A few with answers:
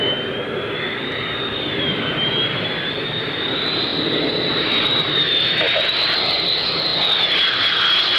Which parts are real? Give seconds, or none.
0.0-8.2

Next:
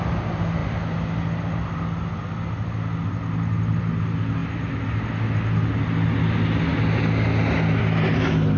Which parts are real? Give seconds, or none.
0.0-8.6

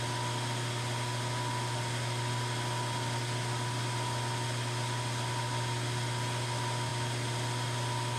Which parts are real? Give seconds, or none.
0.0-8.2

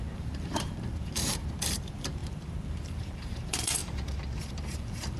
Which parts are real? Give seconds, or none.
3.8-4.4

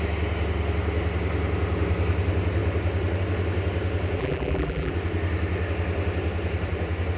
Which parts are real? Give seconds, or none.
0.0-4.2; 4.9-7.2

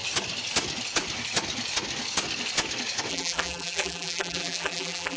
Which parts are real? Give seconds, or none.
0.0-3.1

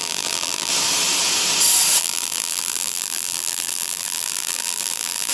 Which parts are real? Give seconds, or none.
0.7-2.0

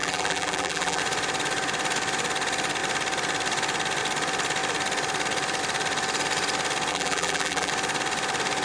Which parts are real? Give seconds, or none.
1.0-6.9; 7.7-8.6